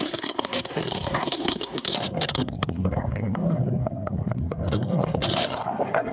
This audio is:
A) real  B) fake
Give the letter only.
B